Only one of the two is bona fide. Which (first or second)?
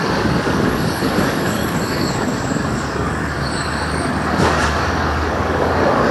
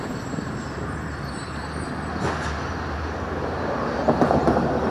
second